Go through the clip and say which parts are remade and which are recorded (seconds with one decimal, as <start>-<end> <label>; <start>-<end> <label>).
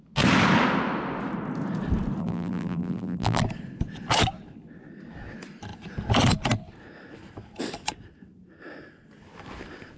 0.0-2.2 recorded; 2.2-3.4 remade; 3.4-10.0 recorded